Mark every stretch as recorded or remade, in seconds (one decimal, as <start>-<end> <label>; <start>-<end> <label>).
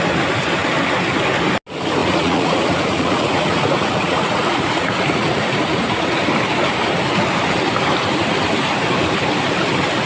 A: 0.0-2.0 recorded; 2.0-6.2 remade; 6.2-10.1 recorded